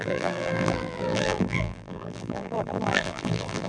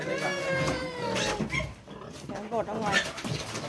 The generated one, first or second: first